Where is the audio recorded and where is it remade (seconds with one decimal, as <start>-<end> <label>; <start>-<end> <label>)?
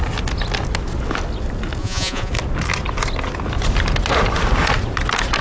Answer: 0.0-1.8 recorded; 1.8-2.3 remade; 2.3-5.4 recorded